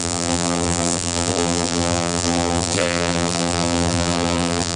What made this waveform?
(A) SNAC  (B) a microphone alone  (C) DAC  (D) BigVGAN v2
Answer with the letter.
D